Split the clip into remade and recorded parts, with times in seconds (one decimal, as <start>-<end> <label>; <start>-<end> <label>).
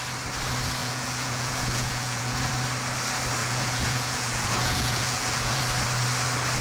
0.0-0.8 recorded; 0.8-2.5 remade; 2.5-3.4 recorded; 3.4-5.6 remade; 5.6-6.6 recorded